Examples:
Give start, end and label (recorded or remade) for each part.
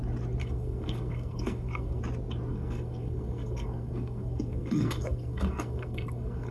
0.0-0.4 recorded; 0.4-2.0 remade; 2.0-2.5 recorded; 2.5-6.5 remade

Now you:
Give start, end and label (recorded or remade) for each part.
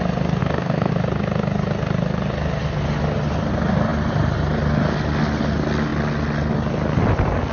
0.0-0.4 recorded; 0.4-0.9 remade; 0.9-7.5 recorded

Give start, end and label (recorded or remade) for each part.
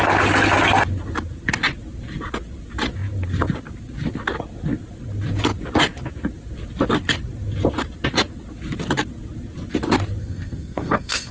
0.0-10.2 recorded; 10.2-11.3 remade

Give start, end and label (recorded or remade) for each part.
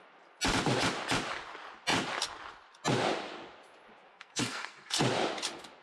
0.0-4.1 recorded; 4.1-5.0 remade; 5.0-5.8 recorded